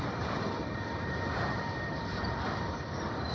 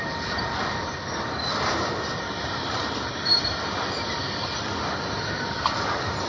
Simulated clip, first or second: first